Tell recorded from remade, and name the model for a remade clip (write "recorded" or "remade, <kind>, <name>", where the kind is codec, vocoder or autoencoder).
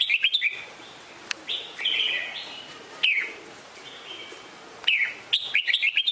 recorded